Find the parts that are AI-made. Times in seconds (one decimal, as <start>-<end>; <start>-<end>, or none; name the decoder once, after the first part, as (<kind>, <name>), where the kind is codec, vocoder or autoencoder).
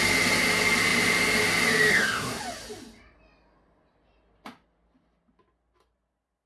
1.9-2.4 (codec, SNAC)